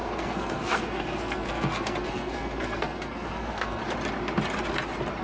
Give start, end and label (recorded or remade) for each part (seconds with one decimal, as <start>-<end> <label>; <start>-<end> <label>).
0.0-3.8 remade; 3.8-5.2 recorded